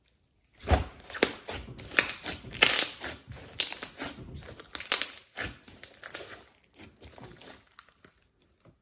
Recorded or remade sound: recorded